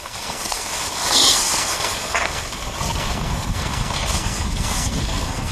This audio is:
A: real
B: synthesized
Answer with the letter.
B